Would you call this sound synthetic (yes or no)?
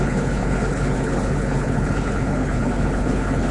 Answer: yes